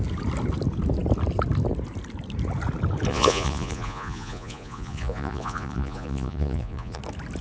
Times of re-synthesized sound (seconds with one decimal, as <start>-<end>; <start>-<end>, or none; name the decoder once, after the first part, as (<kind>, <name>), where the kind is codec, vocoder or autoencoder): 3.1-7.0 (vocoder, Vocos)